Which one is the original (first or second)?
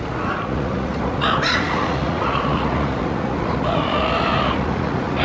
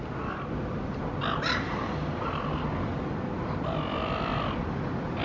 second